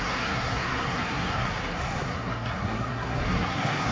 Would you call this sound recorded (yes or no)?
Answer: no